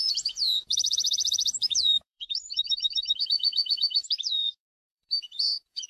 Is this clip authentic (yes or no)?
no